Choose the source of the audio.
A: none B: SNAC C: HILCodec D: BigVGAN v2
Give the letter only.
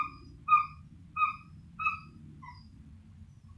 A